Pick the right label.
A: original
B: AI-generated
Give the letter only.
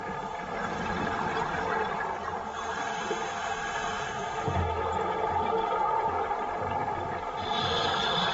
A